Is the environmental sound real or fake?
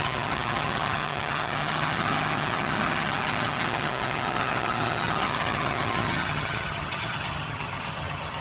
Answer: fake